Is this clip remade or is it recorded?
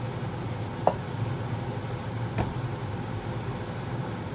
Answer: recorded